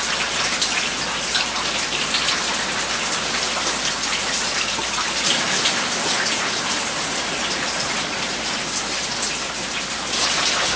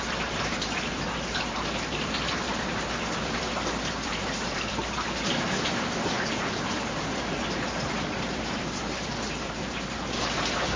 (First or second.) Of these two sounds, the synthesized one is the second